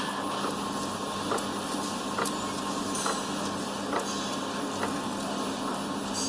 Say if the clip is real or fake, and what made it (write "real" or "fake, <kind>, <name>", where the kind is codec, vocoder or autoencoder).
real